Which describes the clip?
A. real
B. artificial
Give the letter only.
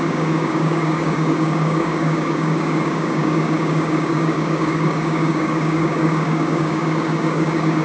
B